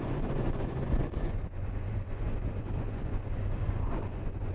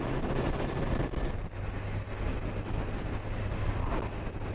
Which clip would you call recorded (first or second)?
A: second